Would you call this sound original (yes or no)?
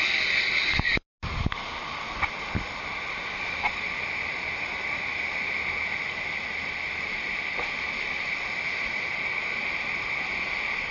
yes